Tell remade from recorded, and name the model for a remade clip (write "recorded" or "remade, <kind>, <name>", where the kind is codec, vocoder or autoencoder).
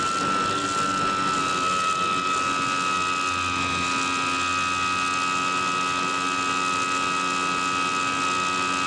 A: recorded